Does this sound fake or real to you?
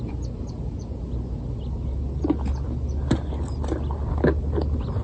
real